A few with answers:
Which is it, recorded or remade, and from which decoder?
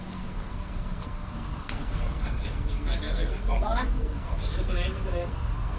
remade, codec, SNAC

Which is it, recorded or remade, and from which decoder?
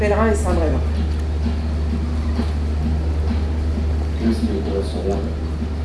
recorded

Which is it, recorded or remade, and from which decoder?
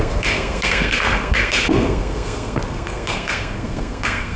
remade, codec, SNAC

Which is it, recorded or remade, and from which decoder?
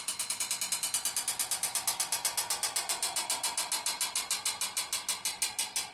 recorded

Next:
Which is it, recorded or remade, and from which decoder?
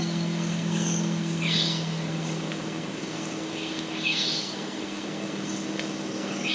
remade, codec, SNAC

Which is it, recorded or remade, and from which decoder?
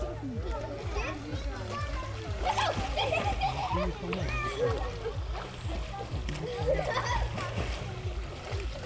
recorded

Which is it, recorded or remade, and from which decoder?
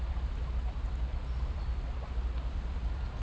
recorded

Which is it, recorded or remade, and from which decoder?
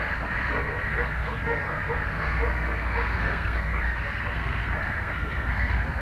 remade, codec, SNAC